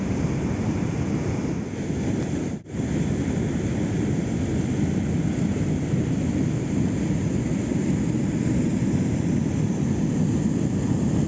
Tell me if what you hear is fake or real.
real